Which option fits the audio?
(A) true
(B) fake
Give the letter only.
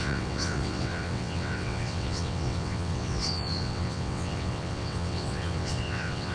B